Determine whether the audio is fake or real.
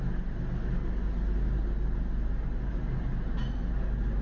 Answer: real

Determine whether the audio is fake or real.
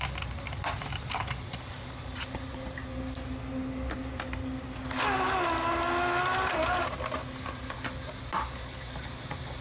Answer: real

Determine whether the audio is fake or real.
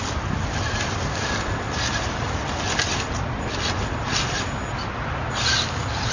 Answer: real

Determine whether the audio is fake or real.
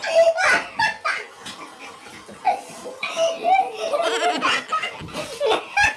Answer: real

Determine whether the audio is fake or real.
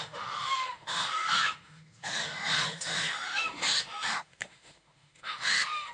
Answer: fake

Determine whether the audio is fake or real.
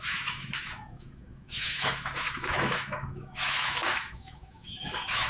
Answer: fake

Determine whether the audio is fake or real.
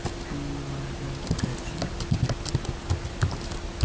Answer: real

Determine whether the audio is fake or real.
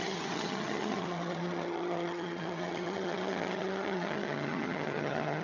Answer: fake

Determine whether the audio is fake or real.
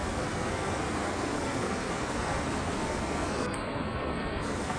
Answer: fake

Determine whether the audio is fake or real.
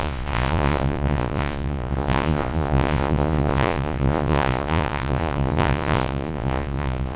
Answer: fake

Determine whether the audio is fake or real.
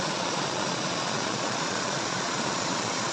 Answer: fake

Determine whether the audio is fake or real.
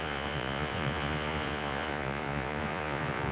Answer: fake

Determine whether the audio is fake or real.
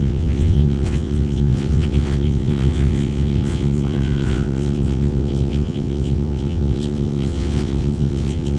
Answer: fake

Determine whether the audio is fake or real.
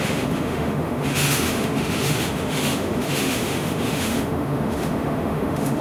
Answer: fake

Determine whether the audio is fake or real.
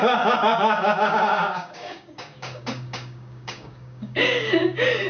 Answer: fake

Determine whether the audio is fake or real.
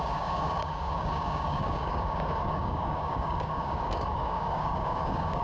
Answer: fake